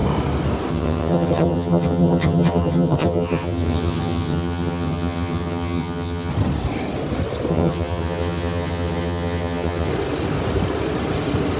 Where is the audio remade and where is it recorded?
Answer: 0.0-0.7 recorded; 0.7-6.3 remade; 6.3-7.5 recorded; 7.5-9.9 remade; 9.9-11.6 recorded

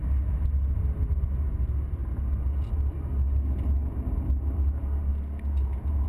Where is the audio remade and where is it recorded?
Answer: 0.0-6.1 recorded

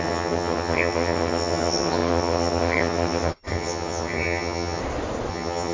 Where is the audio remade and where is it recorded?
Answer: 0.0-4.8 remade; 4.8-5.3 recorded; 5.3-5.7 remade

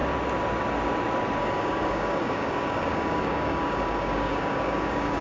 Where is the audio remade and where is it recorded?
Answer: 0.0-1.4 recorded; 1.4-5.2 remade

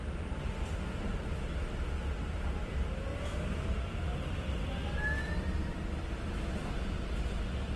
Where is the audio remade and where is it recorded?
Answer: 0.0-3.1 recorded; 3.1-3.8 remade; 3.8-7.8 recorded